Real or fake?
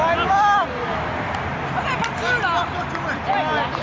real